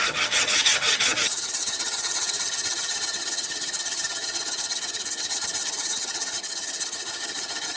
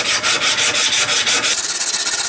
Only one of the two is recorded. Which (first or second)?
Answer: second